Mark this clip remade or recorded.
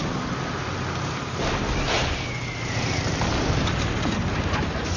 recorded